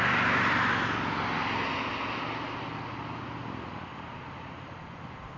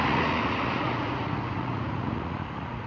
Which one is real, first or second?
first